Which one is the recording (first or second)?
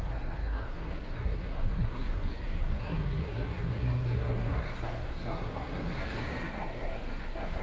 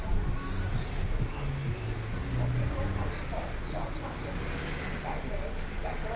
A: second